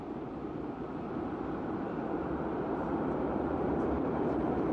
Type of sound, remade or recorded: remade